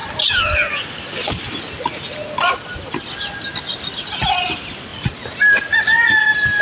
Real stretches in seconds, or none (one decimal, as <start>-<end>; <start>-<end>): 0.0-6.6